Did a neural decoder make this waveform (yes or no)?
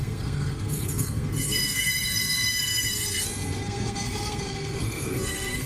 yes